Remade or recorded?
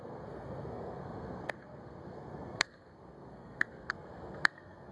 remade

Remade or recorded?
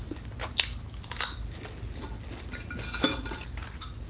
recorded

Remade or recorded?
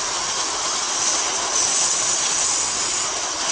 recorded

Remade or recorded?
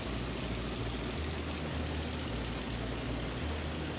recorded